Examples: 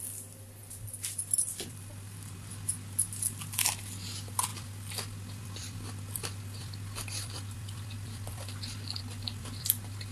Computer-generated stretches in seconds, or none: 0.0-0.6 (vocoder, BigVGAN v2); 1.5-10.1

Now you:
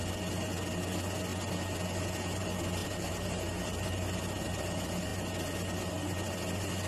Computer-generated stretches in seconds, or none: 2.8-4.2 (vocoder, BigVGAN v2)

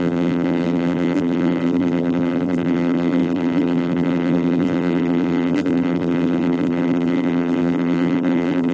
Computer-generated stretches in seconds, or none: 0.0-8.7 (vocoder, BigVGAN v2)

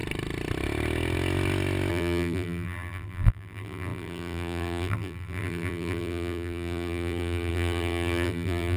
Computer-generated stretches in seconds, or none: 1.9-8.8 (vocoder, BigVGAN v2)

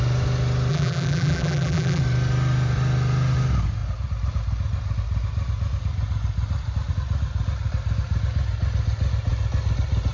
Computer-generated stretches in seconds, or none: 0.7-2.0 (vocoder, BigVGAN v2)

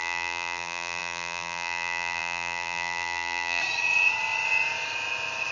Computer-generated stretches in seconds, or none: 0.0-3.6 (vocoder, BigVGAN v2)

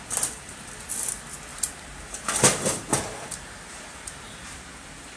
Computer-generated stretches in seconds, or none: 1.5-4.6 (vocoder, BigVGAN v2)